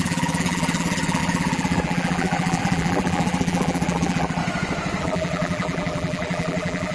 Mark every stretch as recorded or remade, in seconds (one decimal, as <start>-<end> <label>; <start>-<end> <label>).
0.0-4.4 remade; 4.4-5.0 recorded; 5.0-6.9 remade